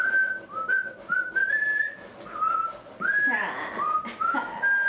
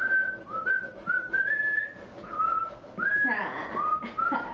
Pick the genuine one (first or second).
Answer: first